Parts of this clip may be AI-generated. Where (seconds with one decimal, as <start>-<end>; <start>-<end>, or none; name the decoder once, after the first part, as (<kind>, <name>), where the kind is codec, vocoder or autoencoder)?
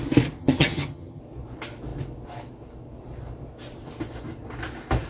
0.4-1.2 (vocoder, HiFi-GAN)